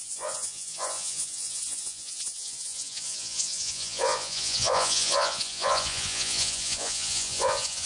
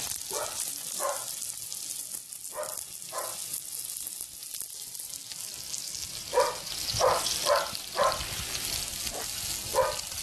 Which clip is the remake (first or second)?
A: first